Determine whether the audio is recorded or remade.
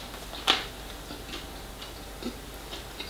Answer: recorded